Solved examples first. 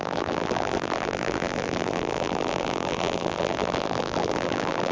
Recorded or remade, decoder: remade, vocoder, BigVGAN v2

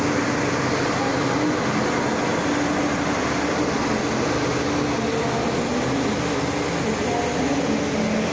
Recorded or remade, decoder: recorded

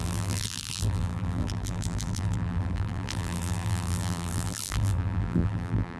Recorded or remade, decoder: remade, vocoder, BigVGAN v2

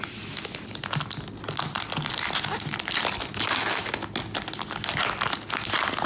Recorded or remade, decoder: recorded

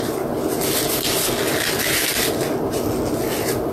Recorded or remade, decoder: recorded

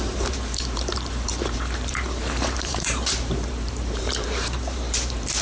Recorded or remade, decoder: remade, vocoder, BigVGAN v2